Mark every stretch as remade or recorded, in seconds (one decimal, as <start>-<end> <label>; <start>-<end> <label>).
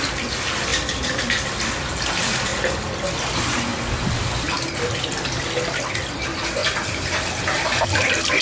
0.0-2.5 remade; 2.5-3.1 recorded; 3.1-3.7 remade; 3.7-4.5 recorded; 4.5-8.4 remade